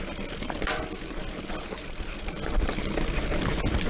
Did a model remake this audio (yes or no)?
no